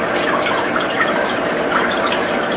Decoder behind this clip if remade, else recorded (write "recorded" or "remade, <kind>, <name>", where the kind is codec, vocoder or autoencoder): remade, vocoder, BigVGAN v2